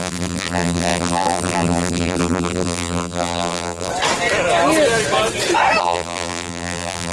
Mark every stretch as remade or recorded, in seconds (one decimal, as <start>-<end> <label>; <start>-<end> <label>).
0.0-3.9 remade; 3.9-5.8 recorded; 5.8-7.1 remade